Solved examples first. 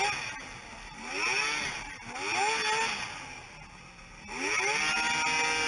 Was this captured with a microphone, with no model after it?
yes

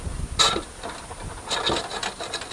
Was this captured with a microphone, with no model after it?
yes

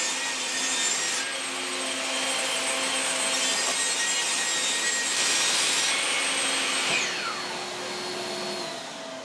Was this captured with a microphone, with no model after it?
yes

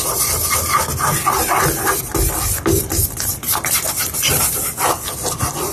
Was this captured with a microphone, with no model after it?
yes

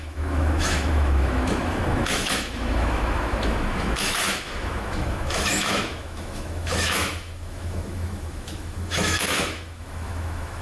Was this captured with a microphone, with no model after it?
no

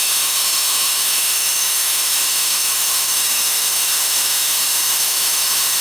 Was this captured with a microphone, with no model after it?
no